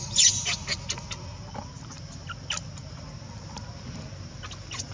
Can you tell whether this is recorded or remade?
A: recorded